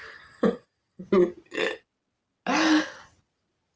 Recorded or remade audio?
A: recorded